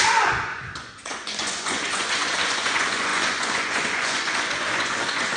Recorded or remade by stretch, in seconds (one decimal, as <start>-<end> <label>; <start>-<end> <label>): 0.0-5.4 remade